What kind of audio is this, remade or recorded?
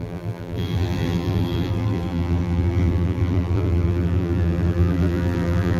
remade